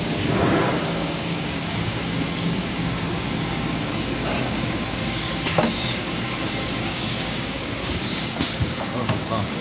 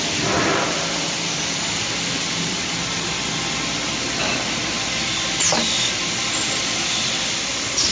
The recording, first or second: second